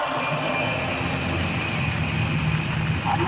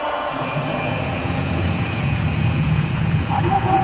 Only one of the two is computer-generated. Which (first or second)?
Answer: second